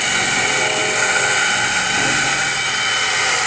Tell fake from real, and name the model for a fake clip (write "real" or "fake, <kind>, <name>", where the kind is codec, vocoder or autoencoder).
real